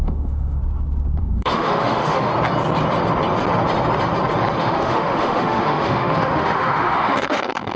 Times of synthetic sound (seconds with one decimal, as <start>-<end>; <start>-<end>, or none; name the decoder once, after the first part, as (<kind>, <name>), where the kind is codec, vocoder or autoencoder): 0.0-0.6 (autoencoder, DAC-VAE); 1.2-2.3; 4.6-7.8